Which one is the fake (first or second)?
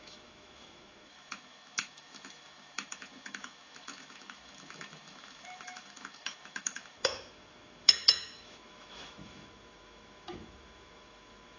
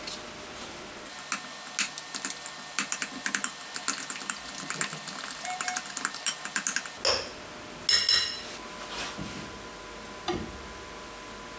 first